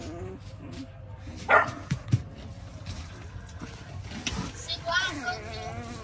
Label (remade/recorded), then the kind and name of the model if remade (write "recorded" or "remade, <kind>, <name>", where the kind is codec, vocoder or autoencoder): recorded